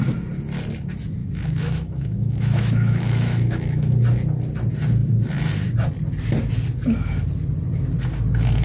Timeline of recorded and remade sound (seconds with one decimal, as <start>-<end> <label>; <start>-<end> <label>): 0.0-1.2 recorded; 1.2-3.9 remade; 3.9-8.6 recorded